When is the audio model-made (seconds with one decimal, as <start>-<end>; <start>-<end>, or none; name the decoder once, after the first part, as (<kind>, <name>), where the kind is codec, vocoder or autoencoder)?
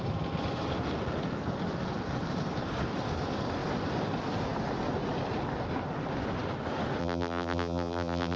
7.0-8.4 (vocoder, BigVGAN v2)